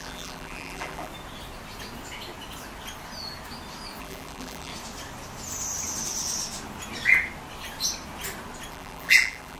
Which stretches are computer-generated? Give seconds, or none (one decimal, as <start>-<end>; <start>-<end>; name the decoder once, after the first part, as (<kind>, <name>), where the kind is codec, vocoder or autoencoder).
0.0-1.1 (vocoder, BigVGAN v2); 4.0-4.7; 8.7-9.6